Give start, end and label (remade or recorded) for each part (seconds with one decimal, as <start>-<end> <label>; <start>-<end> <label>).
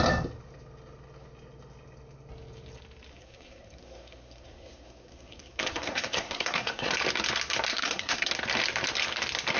0.0-3.1 recorded; 3.1-6.9 remade; 6.9-7.7 recorded; 7.7-8.3 remade; 8.3-9.6 recorded